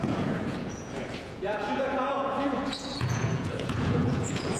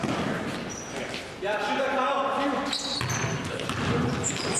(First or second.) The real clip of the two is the second